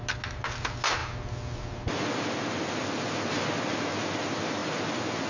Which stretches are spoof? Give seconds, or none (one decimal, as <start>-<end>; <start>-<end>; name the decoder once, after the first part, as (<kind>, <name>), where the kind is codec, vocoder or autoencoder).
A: none